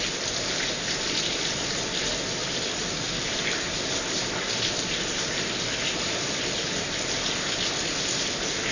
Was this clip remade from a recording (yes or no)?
no